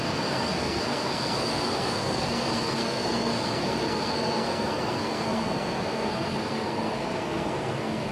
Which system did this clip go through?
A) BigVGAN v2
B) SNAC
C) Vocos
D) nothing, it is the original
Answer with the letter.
B